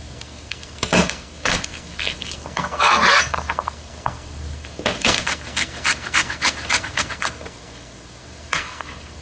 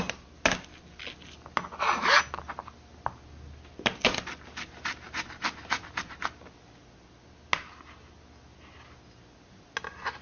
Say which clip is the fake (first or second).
first